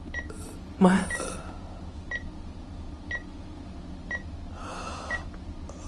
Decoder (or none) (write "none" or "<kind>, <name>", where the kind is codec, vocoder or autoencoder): none